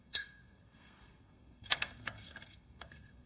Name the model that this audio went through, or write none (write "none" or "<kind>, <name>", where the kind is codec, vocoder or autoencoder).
codec, SNAC